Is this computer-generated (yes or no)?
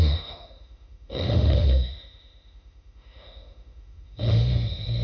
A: yes